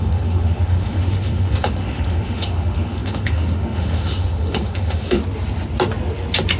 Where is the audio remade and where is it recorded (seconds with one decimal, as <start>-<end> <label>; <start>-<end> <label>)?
0.0-5.2 remade; 5.2-6.6 recorded